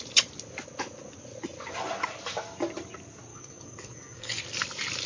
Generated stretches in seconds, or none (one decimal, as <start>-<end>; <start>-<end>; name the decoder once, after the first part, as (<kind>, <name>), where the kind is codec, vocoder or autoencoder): 3.3-4.4 (codec, DAC)